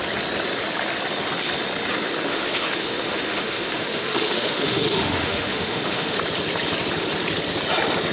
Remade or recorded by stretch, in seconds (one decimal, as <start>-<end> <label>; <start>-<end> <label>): 0.0-2.3 recorded; 2.3-6.2 remade; 6.2-8.1 recorded

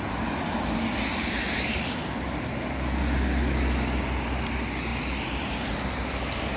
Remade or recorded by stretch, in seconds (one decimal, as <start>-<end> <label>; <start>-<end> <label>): 0.0-1.1 recorded; 1.1-1.9 remade; 1.9-4.9 recorded; 4.9-5.7 remade; 5.7-6.6 recorded

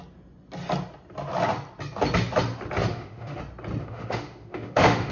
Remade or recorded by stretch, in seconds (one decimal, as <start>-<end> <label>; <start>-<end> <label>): 0.0-2.9 recorded; 2.9-3.4 remade; 3.4-3.8 recorded; 3.8-5.1 remade

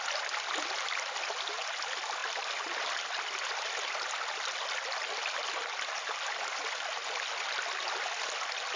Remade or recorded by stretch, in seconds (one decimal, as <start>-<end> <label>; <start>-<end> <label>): 0.0-8.8 recorded

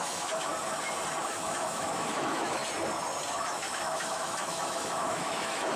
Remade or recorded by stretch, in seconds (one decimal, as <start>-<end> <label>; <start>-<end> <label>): 0.0-0.5 remade; 0.5-1.2 recorded; 1.2-2.6 remade; 2.6-3.3 recorded; 3.3-5.8 remade